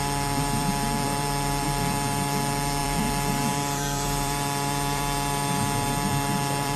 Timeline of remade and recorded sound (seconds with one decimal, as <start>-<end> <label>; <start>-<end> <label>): 0.0-6.8 remade